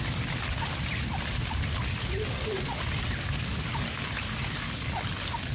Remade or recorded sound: recorded